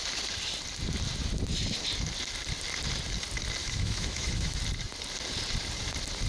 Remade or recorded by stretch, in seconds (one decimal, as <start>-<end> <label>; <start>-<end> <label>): 0.0-3.6 recorded; 3.6-4.6 remade; 4.6-6.3 recorded